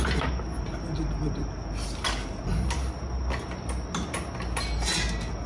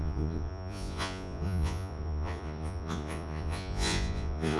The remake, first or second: second